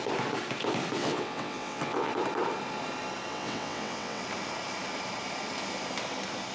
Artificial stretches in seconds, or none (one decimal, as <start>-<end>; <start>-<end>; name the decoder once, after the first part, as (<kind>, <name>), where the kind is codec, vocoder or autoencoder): 1.0-2.1 (vocoder, WaveNeXt); 3.3-4.2